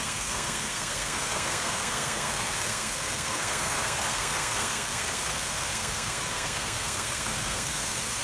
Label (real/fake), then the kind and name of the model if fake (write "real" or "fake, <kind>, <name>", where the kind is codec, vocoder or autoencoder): fake, codec, SNAC